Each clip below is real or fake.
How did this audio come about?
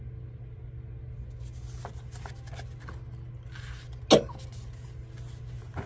real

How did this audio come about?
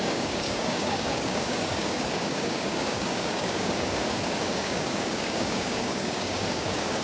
fake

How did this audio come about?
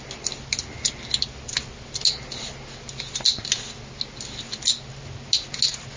real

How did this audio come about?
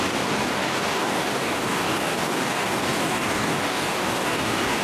fake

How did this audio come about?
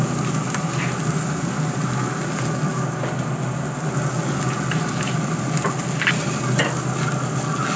real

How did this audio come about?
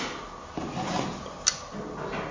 real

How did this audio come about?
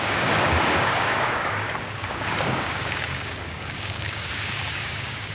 fake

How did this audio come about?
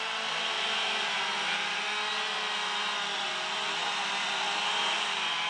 real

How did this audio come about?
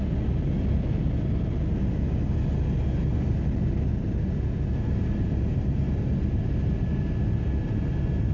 real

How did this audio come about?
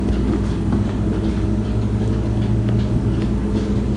fake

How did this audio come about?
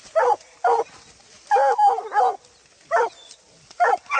real